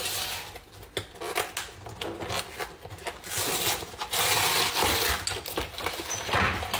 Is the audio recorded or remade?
recorded